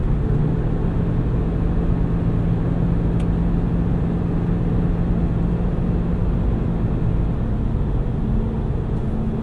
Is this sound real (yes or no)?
yes